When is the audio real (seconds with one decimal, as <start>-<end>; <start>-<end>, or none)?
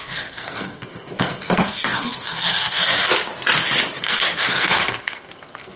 3.1-4.0